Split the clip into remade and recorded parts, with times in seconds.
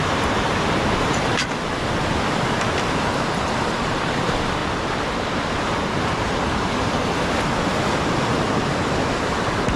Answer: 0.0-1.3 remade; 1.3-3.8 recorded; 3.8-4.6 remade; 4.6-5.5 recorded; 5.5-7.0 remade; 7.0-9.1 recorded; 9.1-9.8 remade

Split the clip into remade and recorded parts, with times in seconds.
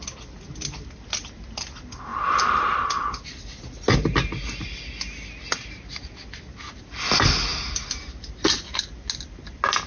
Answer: 0.0-9.9 recorded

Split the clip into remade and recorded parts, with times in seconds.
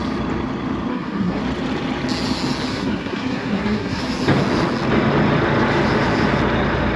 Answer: 0.0-0.9 recorded; 0.9-1.4 remade; 1.4-2.7 recorded; 2.7-4.0 remade; 4.0-7.0 recorded